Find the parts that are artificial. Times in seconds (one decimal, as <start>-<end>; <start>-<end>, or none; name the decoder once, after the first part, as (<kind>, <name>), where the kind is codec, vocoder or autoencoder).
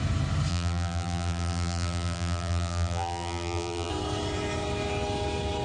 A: 0.5-3.9 (vocoder, BigVGAN v2)